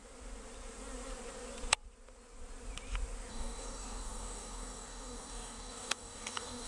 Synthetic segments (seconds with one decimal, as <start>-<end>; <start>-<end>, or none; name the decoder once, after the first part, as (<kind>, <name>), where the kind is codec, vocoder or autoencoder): 3.3-6.7 (codec, DAC)